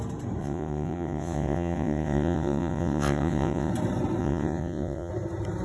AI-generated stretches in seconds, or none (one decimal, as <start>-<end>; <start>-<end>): 0.4-3.7; 4.2-5.1